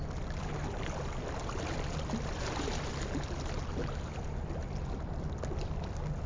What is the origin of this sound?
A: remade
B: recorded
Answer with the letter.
B